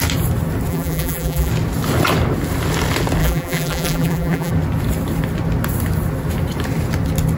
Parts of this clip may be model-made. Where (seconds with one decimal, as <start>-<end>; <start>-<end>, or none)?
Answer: 0.7-1.5; 3.2-4.5

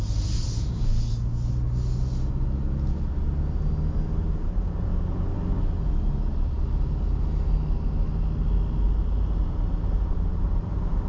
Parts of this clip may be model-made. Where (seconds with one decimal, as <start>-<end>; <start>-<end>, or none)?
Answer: 0.0-0.9; 4.3-4.9; 9.0-11.1

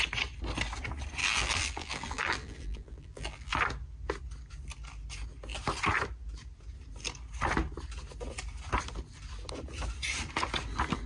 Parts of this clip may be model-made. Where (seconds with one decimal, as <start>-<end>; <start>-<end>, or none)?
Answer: 1.2-3.6